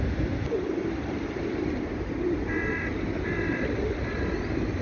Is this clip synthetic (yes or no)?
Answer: no